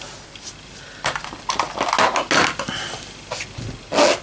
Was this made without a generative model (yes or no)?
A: yes